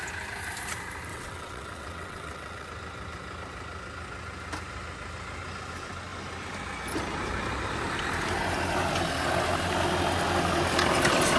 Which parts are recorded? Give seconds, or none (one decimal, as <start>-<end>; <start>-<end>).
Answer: 0.0-1.1; 2.7-11.4